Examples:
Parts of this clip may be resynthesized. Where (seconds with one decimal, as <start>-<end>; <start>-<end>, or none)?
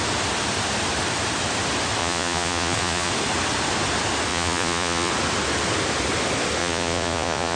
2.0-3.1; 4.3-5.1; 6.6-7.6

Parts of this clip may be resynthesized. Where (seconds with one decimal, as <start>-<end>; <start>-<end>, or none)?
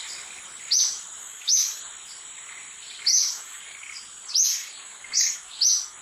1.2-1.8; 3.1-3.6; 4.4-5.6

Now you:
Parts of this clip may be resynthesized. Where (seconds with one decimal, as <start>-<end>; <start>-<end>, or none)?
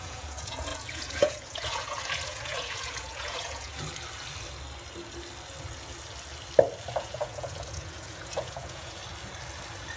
0.0-3.7; 7.0-9.0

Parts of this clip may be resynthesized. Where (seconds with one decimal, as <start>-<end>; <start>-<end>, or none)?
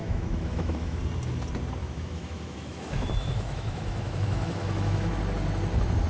0.0-1.0; 1.8-5.2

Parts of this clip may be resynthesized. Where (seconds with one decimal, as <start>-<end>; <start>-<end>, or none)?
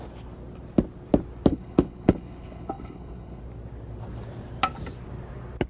1.5-3.4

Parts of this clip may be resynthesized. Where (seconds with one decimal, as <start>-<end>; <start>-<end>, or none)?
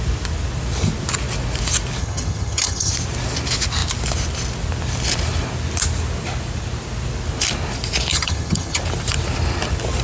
2.0-2.9; 8.1-8.8